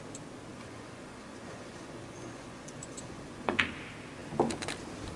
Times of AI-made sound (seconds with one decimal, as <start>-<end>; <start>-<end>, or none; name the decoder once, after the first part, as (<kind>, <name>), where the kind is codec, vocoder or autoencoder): 0.5-3.6 (vocoder, Vocos)